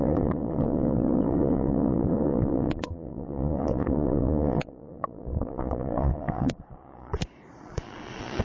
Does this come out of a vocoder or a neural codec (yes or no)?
yes